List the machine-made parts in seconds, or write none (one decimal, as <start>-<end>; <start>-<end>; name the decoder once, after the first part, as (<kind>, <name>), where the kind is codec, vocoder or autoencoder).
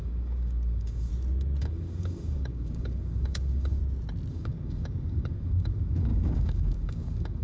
0.0-1.1 (codec, DAC); 1.6-3.8; 4.3-7.4